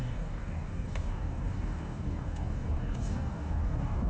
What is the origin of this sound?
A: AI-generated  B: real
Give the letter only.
A